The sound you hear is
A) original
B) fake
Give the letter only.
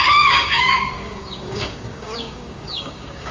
B